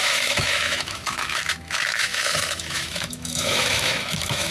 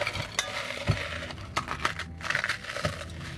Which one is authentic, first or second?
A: second